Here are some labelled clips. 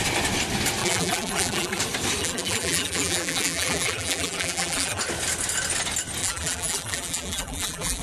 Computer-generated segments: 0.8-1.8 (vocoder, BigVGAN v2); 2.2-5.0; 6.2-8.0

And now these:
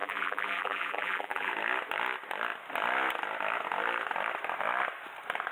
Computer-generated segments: 0.0-1.5 (vocoder, BigVGAN v2)

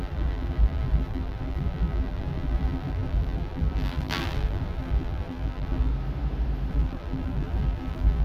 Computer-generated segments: 0.0-5.9 (vocoder, BigVGAN v2); 6.7-8.2

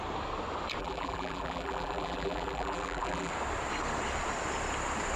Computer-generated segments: 0.8-3.3 (vocoder, BigVGAN v2)

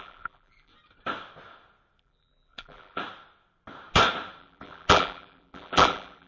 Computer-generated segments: 0.0-0.7 (vocoder, BigVGAN v2); 2.0-3.0; 4.4-6.3